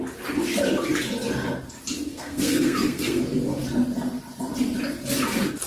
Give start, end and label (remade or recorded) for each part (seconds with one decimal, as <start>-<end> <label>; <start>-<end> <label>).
0.0-2.1 recorded; 2.1-3.2 remade; 3.2-5.7 recorded